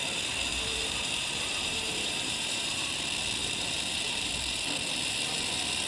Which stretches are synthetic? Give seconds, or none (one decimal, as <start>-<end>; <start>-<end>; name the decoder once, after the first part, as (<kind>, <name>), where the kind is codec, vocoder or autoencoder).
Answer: 0.5-2.9 (vocoder, BigVGAN v2); 3.4-4.3